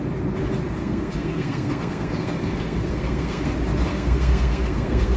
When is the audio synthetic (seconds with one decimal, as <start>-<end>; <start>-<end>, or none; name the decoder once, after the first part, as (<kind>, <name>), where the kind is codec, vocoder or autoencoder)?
0.8-3.5 (codec, SNAC); 3.9-5.2